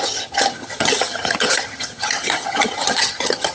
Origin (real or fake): fake